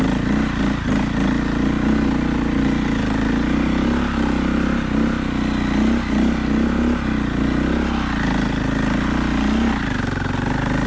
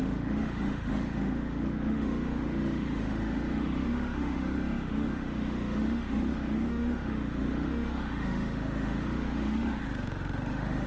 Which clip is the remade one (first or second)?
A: second